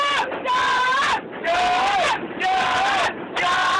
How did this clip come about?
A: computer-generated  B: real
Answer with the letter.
B